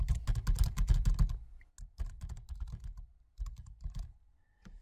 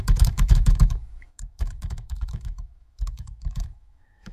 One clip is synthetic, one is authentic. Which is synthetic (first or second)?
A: second